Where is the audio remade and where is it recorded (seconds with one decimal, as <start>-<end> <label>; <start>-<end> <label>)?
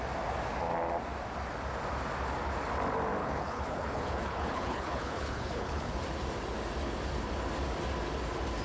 0.0-3.2 recorded; 3.2-5.9 remade; 5.9-8.6 recorded